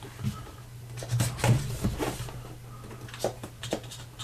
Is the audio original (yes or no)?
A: yes